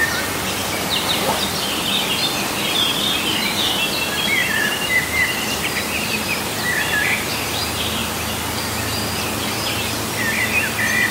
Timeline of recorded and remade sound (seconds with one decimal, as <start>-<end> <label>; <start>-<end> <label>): 0.0-0.6 recorded; 0.6-3.5 remade; 3.5-4.4 recorded; 4.4-7.6 remade; 7.6-8.0 recorded; 8.0-9.2 remade; 9.2-11.1 recorded

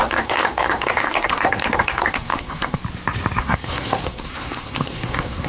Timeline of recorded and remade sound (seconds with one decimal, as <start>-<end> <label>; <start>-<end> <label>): 0.0-2.8 remade; 2.8-3.4 recorded; 3.4-5.5 remade

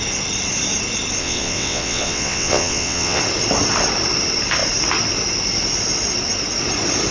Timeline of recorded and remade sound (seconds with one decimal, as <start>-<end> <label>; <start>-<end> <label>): 0.0-1.2 recorded; 1.2-3.2 remade; 3.2-7.1 recorded